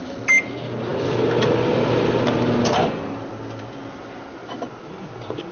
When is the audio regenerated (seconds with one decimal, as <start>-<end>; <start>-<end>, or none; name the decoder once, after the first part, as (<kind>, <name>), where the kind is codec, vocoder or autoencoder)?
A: none